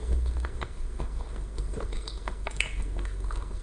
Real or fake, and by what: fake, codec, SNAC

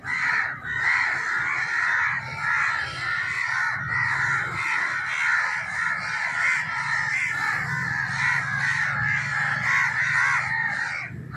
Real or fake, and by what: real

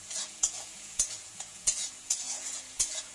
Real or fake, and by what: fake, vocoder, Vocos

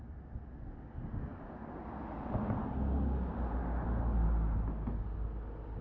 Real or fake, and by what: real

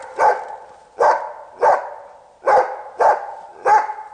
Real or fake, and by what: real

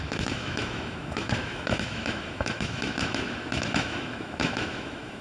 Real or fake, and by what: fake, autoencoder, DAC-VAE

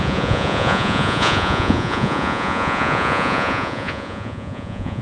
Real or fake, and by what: fake, vocoder, Vocos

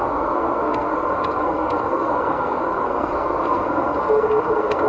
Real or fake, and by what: fake, codec, SNAC